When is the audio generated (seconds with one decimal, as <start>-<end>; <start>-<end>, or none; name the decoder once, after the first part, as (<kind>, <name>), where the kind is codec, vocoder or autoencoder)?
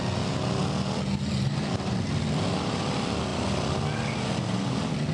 none